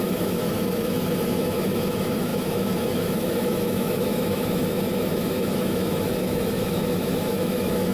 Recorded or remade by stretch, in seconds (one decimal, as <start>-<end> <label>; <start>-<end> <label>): 0.0-7.9 remade